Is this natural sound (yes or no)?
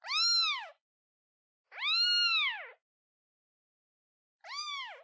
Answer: yes